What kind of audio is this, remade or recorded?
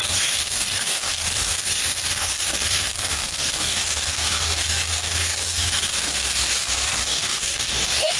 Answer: remade